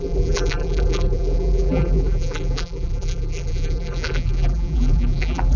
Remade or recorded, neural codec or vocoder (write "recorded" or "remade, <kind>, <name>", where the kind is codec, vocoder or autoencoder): remade, vocoder, BigVGAN v2